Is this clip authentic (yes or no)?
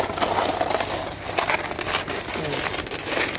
yes